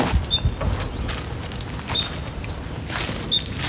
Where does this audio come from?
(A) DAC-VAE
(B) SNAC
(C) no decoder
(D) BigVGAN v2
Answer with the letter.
C